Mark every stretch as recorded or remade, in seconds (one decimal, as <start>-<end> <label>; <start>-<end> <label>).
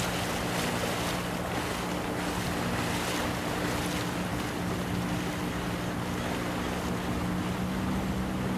0.0-8.6 recorded